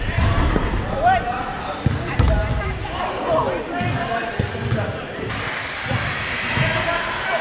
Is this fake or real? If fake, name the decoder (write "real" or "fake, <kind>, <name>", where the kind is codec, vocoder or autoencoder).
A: real